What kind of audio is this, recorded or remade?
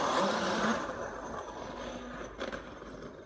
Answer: recorded